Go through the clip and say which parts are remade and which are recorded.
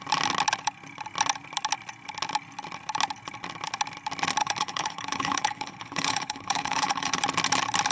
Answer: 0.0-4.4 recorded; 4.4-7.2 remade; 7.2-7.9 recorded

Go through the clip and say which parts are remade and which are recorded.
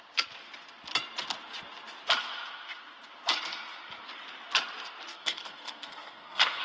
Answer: 0.0-5.1 recorded; 5.1-6.6 remade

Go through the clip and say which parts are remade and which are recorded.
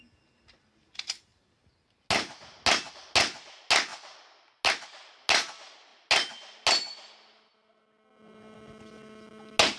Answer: 0.0-9.8 recorded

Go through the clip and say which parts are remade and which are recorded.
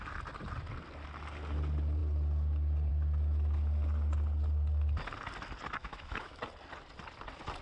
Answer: 0.0-5.8 recorded; 5.8-6.4 remade; 6.4-7.6 recorded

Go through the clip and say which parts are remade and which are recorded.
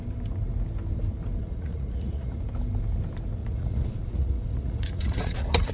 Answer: 0.0-1.4 recorded; 1.4-2.4 remade; 2.4-3.4 recorded; 3.4-5.7 remade